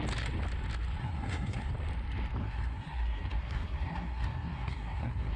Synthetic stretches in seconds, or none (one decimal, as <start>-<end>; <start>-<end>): 1.0-1.7; 2.4-5.4

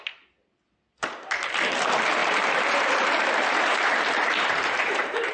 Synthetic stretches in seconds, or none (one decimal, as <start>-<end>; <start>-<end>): 2.2-5.3

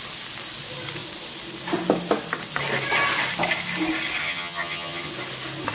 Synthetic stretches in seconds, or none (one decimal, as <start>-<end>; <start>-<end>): 4.2-5.1